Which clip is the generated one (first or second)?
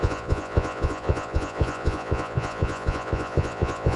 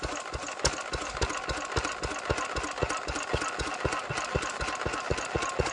first